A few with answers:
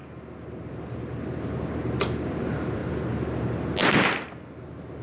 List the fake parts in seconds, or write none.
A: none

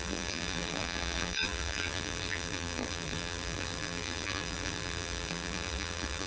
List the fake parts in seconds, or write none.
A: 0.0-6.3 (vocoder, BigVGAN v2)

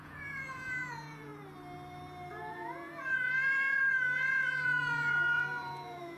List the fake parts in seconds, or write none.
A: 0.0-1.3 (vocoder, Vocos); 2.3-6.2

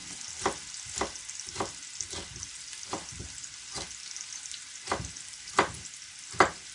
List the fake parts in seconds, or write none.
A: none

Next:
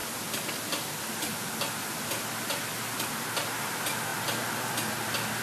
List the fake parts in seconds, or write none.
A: none

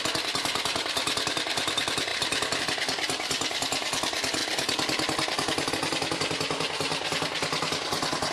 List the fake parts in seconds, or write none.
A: none